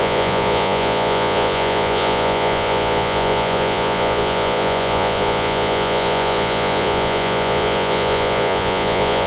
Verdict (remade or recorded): remade